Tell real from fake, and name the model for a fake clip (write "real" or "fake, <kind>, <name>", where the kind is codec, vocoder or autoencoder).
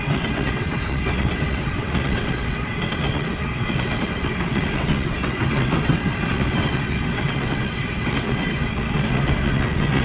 fake, vocoder, WaveNeXt